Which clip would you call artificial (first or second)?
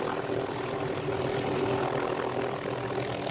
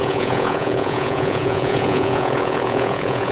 second